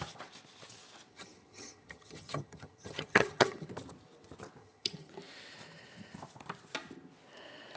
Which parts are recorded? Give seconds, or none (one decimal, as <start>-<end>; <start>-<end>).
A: 0.0-1.1; 3.7-4.6; 5.1-7.8